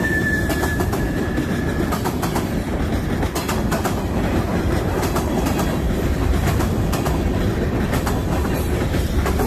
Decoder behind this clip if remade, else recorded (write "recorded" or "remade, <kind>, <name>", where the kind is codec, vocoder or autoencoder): remade, vocoder, BigVGAN v2